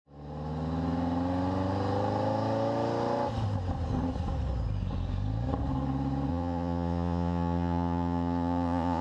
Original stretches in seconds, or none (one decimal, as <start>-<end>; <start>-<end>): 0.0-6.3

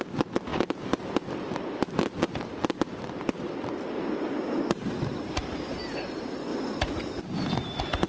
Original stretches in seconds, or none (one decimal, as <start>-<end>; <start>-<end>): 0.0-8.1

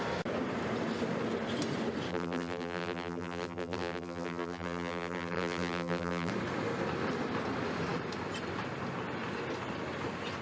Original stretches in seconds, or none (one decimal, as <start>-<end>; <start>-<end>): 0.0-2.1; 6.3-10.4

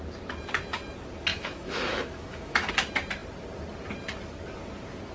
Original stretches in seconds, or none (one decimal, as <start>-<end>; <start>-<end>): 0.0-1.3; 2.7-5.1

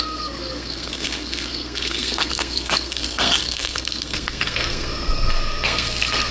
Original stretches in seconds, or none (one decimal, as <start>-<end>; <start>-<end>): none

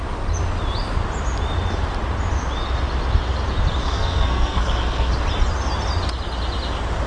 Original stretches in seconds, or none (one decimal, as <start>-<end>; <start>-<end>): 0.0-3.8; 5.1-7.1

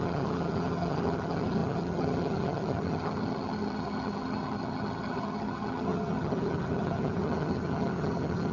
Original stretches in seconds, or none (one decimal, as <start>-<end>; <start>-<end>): none

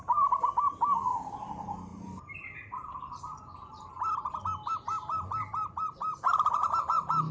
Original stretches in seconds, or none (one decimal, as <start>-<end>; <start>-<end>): 0.0-1.9; 6.3-7.3